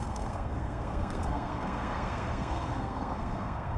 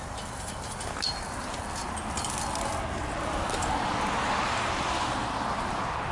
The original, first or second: second